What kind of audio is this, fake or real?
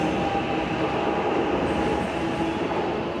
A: real